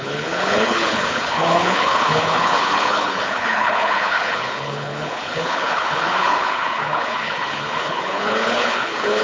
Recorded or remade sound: remade